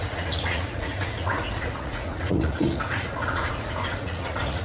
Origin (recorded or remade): remade